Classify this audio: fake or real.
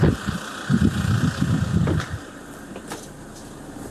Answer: real